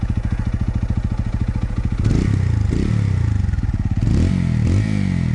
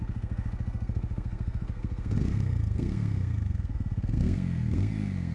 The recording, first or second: first